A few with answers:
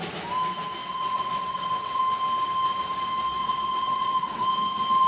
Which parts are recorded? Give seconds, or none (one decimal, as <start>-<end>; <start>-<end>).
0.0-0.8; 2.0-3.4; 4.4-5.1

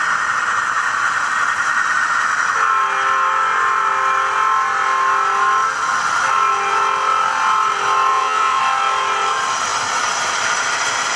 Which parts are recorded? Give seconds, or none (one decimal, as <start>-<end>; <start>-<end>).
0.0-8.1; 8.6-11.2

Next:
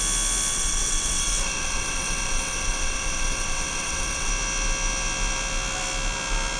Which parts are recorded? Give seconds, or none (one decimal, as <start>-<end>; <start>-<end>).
0.0-0.5; 4.3-6.6